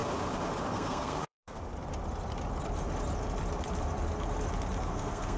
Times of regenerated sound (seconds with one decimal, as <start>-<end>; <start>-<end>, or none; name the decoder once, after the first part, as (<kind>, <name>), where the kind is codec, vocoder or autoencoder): 0.7-1.6 (codec, SNAC); 4.8-5.4